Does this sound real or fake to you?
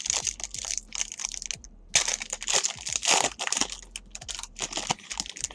real